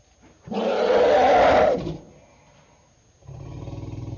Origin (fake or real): real